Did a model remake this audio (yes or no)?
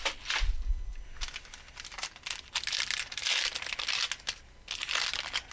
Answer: no